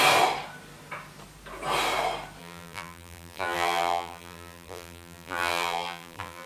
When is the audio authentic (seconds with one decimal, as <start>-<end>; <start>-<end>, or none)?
0.0-2.4